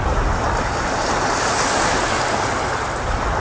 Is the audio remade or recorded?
recorded